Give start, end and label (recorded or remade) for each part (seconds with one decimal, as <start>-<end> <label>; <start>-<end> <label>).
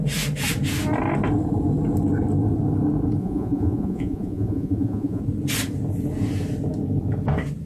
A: 0.0-3.2 recorded; 3.2-5.2 remade; 5.2-7.7 recorded